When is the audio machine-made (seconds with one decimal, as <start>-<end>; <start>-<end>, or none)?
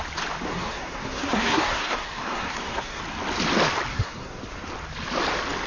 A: 0.5-3.0; 3.9-4.4